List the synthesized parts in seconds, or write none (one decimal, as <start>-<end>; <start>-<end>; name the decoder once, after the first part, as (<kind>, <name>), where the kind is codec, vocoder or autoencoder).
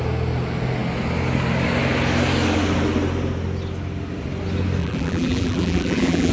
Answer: 4.8-6.3 (vocoder, BigVGAN v2)